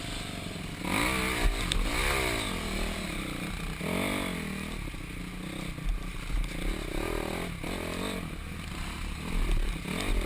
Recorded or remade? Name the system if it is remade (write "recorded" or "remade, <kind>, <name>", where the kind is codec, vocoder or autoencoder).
recorded